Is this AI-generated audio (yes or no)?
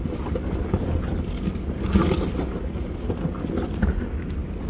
no